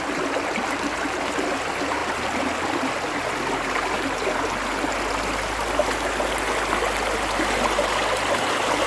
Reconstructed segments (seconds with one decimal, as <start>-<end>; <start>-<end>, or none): none